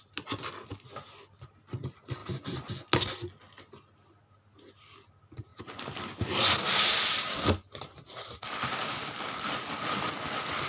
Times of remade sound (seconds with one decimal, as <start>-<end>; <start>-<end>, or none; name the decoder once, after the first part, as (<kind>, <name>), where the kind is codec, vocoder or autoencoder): none